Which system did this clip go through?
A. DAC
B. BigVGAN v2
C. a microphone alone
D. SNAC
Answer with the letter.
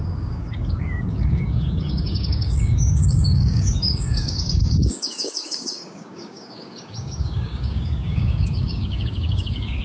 A